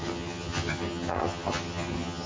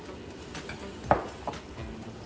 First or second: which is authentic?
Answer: second